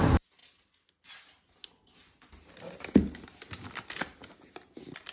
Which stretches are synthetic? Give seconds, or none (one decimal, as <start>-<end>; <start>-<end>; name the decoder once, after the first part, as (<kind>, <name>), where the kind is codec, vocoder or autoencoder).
none